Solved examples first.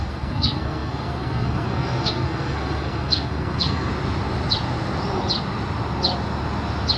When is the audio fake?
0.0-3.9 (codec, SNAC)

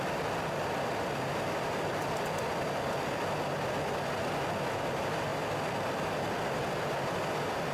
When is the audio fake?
none